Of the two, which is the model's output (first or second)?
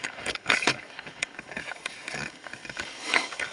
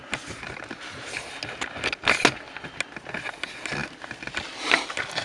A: first